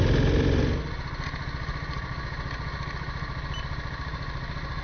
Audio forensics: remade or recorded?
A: recorded